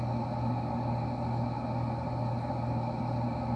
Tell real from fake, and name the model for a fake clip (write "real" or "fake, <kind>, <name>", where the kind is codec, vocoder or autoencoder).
real